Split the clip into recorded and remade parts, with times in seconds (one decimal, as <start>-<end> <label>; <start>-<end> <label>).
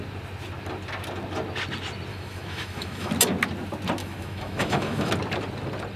0.0-2.1 recorded; 2.1-3.1 remade; 3.1-4.0 recorded; 4.0-5.1 remade; 5.1-6.0 recorded